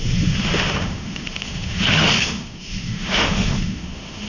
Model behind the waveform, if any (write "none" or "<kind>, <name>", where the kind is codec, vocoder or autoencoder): autoencoder, DAC-VAE